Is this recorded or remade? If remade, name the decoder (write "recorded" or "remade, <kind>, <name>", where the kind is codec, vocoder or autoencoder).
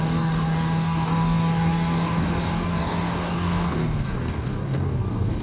remade, codec, DAC